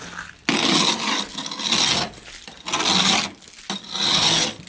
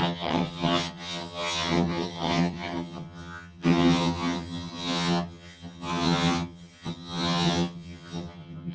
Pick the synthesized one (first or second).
second